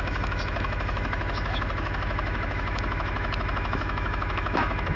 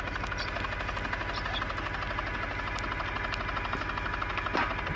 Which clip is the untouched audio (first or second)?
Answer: second